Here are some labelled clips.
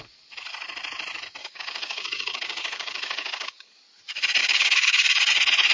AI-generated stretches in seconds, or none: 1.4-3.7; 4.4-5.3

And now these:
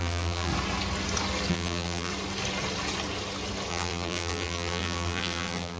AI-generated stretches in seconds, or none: 0.0-0.5; 1.5-2.1; 3.7-5.8

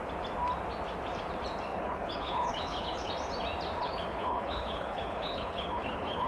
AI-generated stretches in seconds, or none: 1.7-3.1; 3.8-6.3